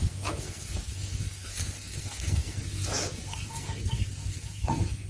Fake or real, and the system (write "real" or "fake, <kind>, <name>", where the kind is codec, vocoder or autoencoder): fake, codec, SNAC